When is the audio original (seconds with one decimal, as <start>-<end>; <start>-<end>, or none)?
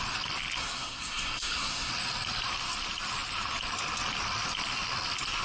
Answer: 0.0-0.6; 1.9-5.4